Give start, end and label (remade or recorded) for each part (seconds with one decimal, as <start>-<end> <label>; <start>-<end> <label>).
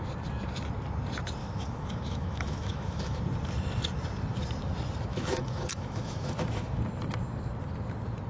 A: 0.0-1.4 recorded; 1.4-3.2 remade; 3.2-5.1 recorded; 5.1-6.8 remade; 6.8-8.3 recorded